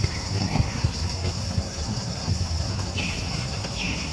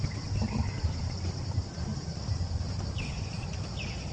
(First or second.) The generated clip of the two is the first